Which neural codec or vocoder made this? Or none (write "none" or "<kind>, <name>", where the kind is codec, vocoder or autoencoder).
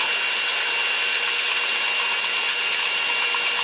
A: none